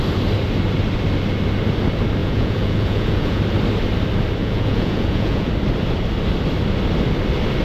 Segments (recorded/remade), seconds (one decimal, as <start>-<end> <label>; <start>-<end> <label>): 0.0-2.2 recorded; 2.2-3.4 remade; 3.4-4.4 recorded; 4.4-5.5 remade; 5.5-7.6 recorded